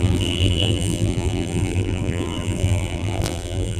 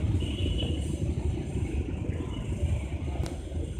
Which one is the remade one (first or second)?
first